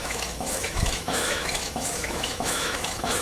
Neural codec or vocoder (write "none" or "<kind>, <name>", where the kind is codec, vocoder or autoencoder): autoencoder, DAC-VAE